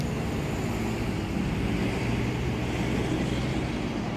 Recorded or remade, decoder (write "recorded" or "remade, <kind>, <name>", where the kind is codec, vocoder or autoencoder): recorded